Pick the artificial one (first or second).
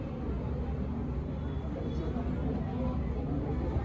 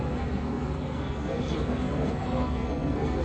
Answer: second